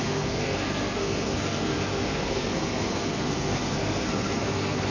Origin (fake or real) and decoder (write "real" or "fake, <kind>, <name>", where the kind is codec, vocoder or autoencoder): fake, codec, SNAC